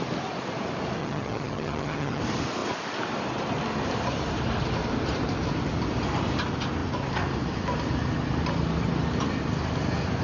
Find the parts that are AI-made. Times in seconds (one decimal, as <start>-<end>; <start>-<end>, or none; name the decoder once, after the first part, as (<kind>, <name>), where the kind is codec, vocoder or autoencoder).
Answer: 1.0-2.2 (vocoder, HiFi-GAN)